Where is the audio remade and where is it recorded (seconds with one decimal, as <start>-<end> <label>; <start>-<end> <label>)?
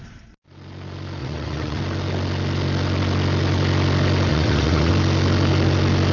0.0-1.2 recorded; 1.2-1.8 remade; 1.8-4.3 recorded; 4.3-4.9 remade; 4.9-6.1 recorded